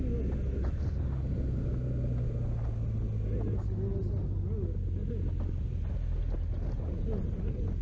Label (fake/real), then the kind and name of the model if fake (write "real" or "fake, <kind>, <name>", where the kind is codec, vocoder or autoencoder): real